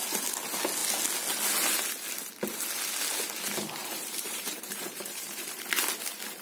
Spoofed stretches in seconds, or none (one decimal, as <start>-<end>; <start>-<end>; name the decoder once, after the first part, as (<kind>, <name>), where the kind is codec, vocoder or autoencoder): 3.8-5.6 (vocoder, BigVGAN v2)